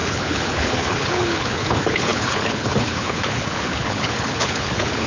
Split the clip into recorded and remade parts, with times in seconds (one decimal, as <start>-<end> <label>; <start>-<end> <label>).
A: 0.0-5.1 remade